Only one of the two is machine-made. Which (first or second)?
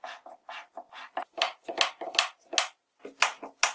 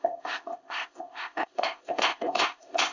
second